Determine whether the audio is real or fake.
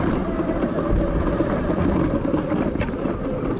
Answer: real